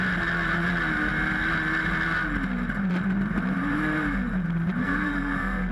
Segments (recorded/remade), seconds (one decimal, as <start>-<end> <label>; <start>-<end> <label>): 0.0-4.8 recorded; 4.8-5.7 remade